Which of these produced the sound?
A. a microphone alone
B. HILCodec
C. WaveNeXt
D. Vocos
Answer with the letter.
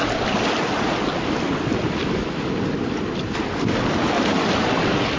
A